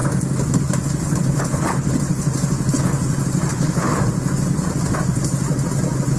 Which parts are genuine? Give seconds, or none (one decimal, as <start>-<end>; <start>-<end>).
0.0-1.1; 1.9-3.5; 4.0-6.2